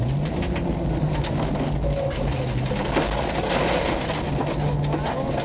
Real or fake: real